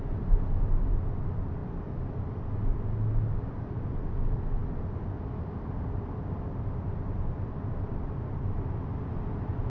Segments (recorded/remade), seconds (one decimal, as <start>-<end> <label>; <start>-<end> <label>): 0.0-9.7 recorded